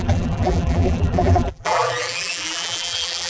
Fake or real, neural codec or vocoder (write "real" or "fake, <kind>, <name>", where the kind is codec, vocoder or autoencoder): fake, vocoder, BigVGAN v2